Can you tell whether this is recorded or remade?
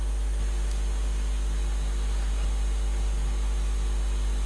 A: recorded